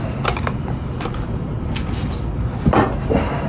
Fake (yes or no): no